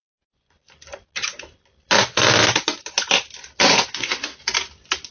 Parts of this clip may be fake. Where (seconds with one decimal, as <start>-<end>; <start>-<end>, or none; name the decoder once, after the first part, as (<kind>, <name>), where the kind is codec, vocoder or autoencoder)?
0.0-0.6 (vocoder, Vocos); 3.7-4.3